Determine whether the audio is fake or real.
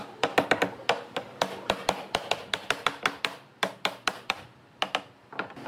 real